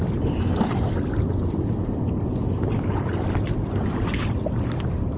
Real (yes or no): yes